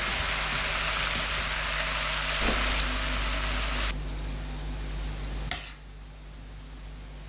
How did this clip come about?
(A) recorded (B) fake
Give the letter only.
A